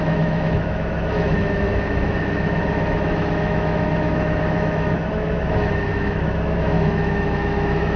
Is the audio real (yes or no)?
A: no